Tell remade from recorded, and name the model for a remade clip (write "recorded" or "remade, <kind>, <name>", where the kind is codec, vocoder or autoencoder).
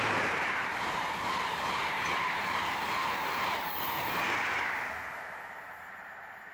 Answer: remade, vocoder, BigVGAN v2